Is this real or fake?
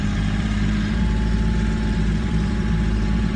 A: fake